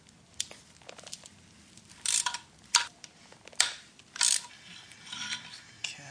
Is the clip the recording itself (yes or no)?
yes